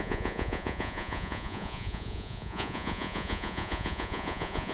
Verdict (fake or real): fake